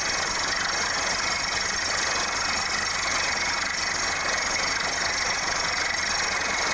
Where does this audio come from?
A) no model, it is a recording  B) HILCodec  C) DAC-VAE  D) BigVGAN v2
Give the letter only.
A